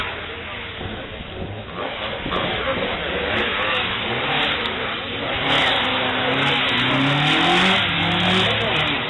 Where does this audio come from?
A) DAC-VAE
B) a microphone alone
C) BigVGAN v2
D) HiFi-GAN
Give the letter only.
B